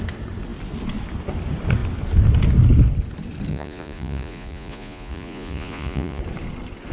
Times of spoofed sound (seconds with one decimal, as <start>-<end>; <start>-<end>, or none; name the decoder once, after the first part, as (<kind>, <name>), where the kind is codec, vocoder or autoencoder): 3.5-6.2 (vocoder, Vocos)

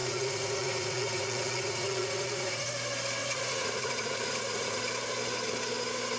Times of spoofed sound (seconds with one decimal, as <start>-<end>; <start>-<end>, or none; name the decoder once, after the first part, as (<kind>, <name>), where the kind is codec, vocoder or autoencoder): 0.0-2.7 (vocoder, Vocos); 3.2-4.8